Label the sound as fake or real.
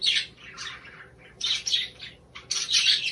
real